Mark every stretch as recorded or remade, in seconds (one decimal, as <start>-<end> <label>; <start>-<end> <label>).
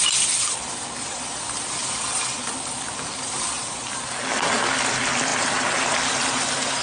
0.0-6.8 recorded